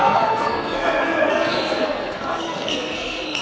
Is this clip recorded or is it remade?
remade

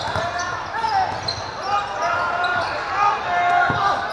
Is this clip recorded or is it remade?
recorded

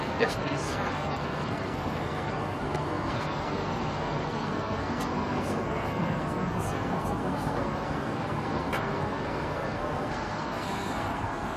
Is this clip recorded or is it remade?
remade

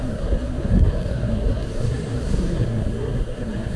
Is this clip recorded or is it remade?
remade